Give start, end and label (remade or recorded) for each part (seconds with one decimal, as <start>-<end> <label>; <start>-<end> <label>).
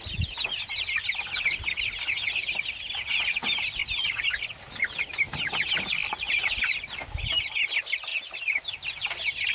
0.0-9.5 recorded